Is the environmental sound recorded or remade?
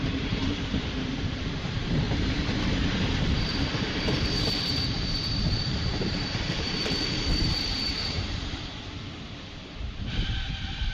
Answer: remade